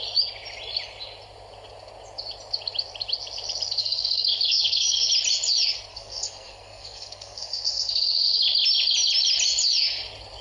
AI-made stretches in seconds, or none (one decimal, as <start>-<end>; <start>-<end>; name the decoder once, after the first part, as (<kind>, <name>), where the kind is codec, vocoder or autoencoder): 3.8-5.1 (codec, SNAC); 5.9-8.4